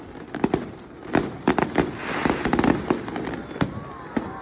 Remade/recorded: recorded